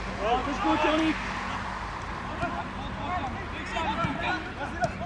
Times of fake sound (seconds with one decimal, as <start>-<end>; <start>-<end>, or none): none